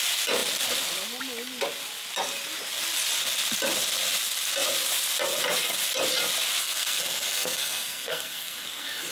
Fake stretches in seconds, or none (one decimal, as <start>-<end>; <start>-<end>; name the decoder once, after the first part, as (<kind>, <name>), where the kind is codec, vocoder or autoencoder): 6.6-9.1 (codec, SNAC)